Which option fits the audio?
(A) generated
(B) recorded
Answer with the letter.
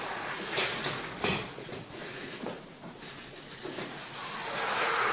A